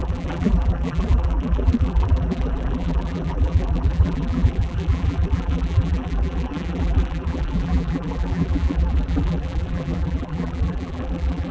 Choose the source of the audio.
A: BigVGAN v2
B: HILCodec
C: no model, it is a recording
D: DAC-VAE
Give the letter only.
A